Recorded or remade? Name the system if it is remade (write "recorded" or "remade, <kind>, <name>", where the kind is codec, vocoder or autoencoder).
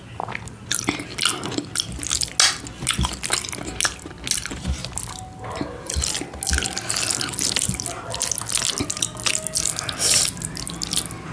recorded